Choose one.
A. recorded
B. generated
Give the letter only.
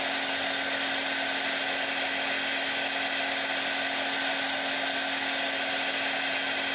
A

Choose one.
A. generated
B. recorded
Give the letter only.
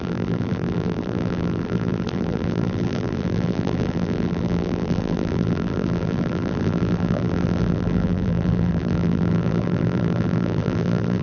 A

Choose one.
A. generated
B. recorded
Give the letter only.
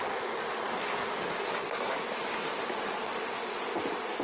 B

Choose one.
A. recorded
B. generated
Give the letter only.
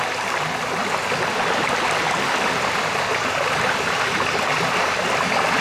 A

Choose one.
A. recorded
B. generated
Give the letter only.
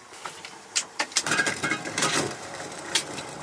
B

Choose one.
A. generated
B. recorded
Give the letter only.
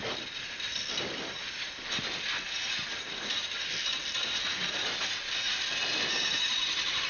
B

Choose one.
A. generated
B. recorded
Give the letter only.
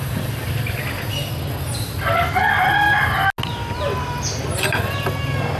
B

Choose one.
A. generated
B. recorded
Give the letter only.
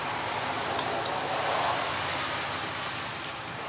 B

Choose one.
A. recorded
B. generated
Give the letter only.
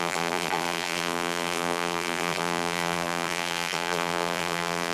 B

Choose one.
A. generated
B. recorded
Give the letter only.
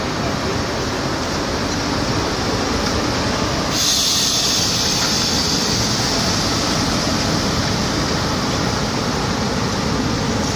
A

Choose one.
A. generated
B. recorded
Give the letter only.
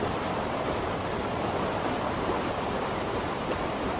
B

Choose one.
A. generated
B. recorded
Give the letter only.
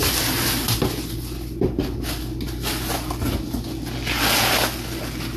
B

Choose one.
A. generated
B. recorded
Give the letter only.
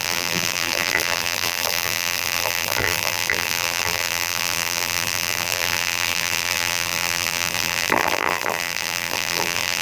A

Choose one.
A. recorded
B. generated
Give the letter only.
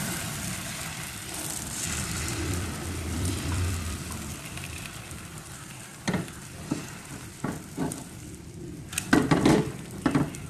B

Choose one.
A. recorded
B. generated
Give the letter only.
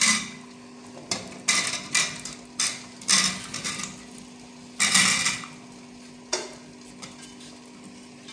A